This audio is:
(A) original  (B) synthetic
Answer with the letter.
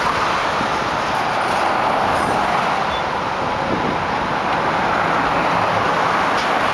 A